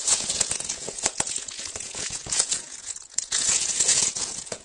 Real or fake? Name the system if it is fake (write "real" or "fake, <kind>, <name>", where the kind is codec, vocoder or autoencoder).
fake, vocoder, Vocos